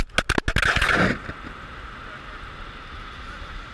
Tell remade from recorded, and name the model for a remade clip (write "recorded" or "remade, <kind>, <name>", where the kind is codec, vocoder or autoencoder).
recorded